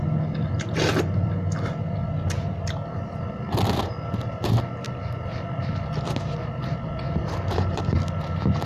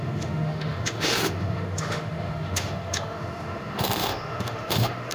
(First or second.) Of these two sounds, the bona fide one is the first